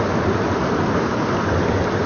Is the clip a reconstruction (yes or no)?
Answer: no